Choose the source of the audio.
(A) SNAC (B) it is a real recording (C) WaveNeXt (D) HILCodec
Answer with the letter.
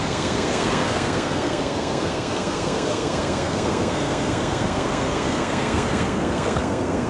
A